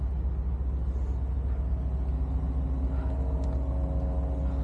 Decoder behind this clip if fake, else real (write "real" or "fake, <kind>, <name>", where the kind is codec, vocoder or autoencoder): real